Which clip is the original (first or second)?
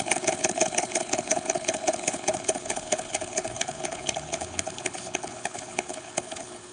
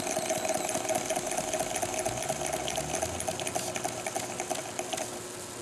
second